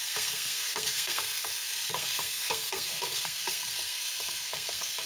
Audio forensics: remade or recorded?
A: remade